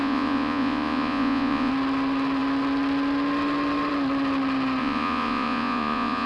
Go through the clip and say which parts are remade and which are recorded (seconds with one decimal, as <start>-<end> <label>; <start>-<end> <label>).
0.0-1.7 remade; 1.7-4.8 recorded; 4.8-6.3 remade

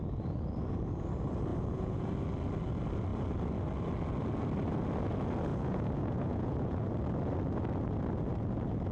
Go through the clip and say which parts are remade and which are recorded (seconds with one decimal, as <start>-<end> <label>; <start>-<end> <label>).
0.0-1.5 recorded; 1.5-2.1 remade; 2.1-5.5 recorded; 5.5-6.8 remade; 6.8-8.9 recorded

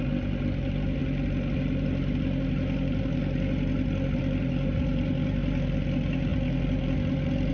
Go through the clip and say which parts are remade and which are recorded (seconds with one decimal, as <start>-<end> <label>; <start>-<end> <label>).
0.0-7.5 recorded

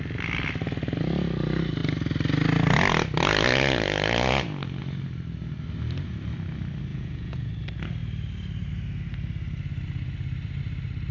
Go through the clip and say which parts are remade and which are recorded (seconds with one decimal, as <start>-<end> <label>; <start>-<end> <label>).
0.0-6.9 recorded; 6.9-7.5 remade; 7.5-11.1 recorded

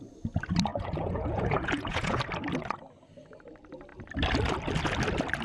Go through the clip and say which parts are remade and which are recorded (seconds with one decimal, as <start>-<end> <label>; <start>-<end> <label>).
0.0-0.7 recorded; 0.7-2.2 remade; 2.2-5.4 recorded

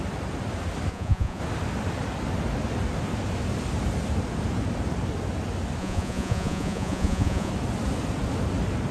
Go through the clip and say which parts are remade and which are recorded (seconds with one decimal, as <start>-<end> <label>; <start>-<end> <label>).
0.0-0.9 recorded; 0.9-1.4 remade; 1.4-5.8 recorded; 5.8-7.5 remade; 7.5-8.9 recorded

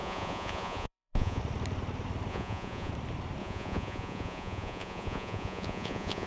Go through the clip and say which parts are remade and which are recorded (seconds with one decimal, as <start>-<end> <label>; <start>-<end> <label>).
0.0-1.4 remade; 1.4-2.3 recorded; 2.3-2.9 remade; 2.9-3.4 recorded; 3.4-6.3 remade